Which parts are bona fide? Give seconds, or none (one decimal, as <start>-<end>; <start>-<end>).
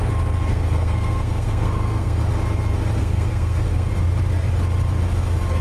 0.0-0.5; 2.2-3.0; 3.9-5.6